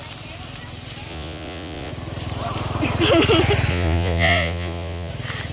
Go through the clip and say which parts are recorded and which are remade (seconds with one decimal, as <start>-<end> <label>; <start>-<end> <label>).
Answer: 0.0-1.1 recorded; 1.1-1.9 remade; 1.9-3.7 recorded; 3.7-5.1 remade; 5.1-5.5 recorded

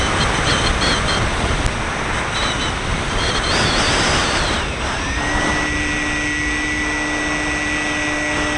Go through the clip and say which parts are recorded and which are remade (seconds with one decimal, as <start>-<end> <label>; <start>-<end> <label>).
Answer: 0.0-4.2 recorded; 4.2-5.2 remade; 5.2-8.6 recorded